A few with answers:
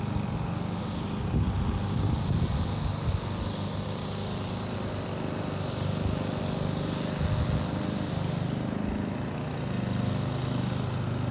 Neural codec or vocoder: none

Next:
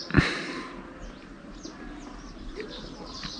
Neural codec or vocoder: none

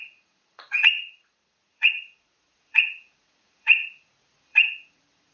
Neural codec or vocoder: vocoder, Vocos